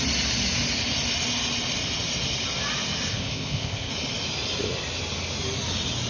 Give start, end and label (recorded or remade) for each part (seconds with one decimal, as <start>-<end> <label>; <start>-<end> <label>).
0.0-3.1 recorded; 3.1-3.9 remade; 3.9-6.1 recorded